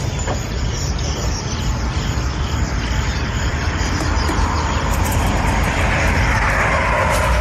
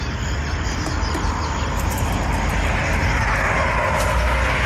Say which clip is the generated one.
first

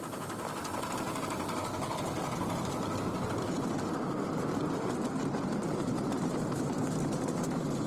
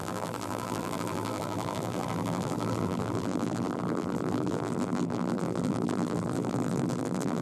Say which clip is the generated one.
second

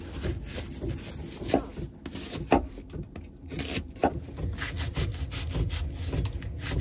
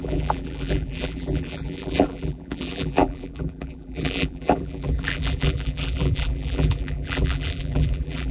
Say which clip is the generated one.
second